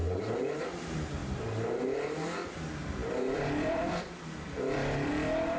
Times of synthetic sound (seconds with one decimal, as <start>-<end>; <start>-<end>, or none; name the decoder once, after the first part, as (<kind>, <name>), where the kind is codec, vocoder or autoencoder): 3.0-5.1 (vocoder, BigVGAN v2)

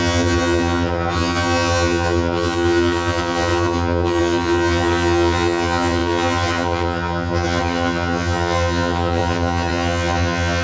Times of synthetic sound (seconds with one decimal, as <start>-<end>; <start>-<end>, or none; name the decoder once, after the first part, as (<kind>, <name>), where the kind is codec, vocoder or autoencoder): 0.0-10.6 (vocoder, HiFi-GAN)